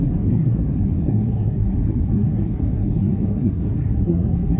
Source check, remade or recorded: remade